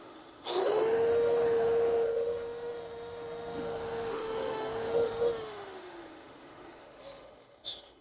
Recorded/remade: remade